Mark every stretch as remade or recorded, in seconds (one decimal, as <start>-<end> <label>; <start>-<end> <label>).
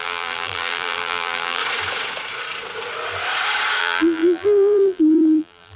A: 0.0-1.6 remade; 1.6-3.8 recorded; 3.8-5.8 remade